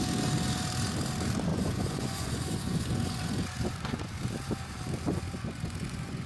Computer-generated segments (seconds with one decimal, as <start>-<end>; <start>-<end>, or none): 1.5-4.2; 5.1-6.3